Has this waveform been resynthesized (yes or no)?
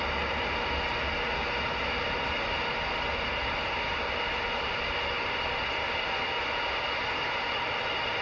no